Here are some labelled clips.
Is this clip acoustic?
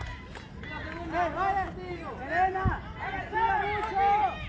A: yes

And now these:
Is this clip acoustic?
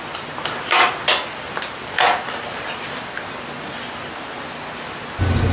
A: yes